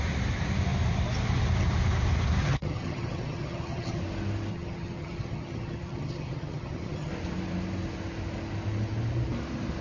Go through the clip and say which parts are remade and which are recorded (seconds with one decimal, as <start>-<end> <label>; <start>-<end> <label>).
0.0-2.4 recorded; 2.4-4.0 remade; 4.0-4.5 recorded; 4.5-7.1 remade; 7.1-9.8 recorded